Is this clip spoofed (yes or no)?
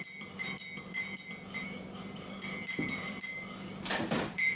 yes